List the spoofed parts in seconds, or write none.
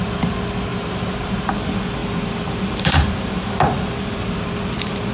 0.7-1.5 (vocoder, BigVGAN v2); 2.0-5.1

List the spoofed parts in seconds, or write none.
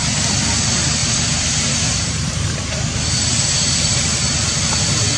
1.0-3.7 (vocoder, BigVGAN v2)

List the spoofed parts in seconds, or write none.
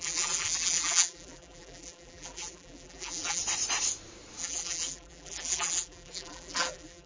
0.0-3.4 (vocoder, BigVGAN v2); 4.4-7.1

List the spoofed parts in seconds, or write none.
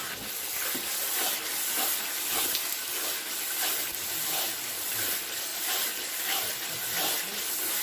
none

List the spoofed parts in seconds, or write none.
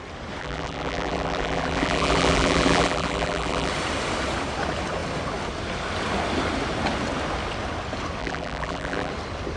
0.4-3.7 (vocoder, BigVGAN v2); 8.2-9.1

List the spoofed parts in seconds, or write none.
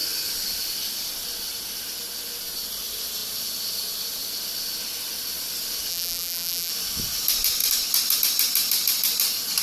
5.9-6.7 (vocoder, BigVGAN v2)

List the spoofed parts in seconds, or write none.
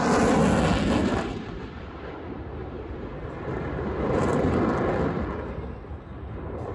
1.0-2.1 (vocoder, BigVGAN v2); 2.6-4.6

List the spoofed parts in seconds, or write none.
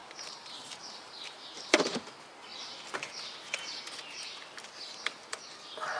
0.0-1.8 (vocoder, BigVGAN v2)